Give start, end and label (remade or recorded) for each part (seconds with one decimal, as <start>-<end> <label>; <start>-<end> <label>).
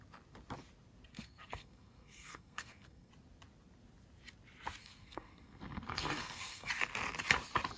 0.0-1.1 recorded; 1.1-3.1 remade; 3.1-4.8 recorded; 4.8-6.7 remade; 6.7-7.8 recorded